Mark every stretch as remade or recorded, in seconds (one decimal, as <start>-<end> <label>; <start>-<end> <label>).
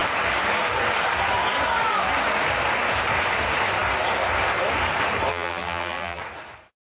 0.0-5.3 recorded; 5.3-6.2 remade; 6.2-7.0 recorded